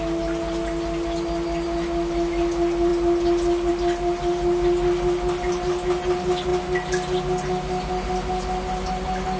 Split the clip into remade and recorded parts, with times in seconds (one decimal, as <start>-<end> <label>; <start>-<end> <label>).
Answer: 0.0-9.4 recorded